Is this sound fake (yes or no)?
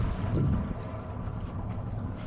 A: yes